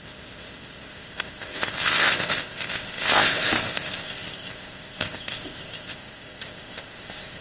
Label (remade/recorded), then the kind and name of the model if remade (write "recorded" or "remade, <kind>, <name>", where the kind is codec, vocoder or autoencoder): remade, codec, ZipCodec